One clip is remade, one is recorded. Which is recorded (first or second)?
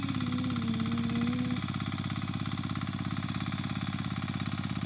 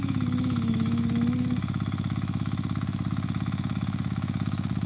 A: first